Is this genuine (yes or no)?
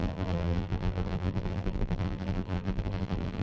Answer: no